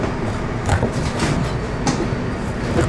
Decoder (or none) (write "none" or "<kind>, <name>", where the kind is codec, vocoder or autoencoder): none